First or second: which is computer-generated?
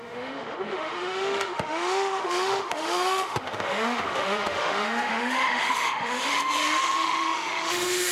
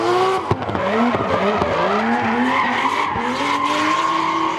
first